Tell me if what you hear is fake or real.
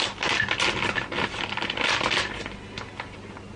real